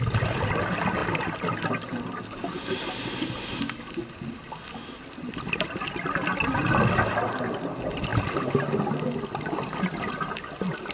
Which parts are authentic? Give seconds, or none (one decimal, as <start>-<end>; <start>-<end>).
0.0-10.9